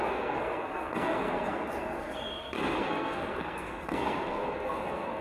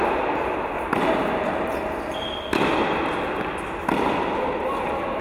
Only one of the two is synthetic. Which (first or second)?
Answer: first